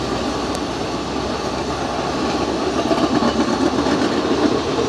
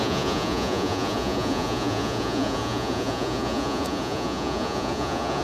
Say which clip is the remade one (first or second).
second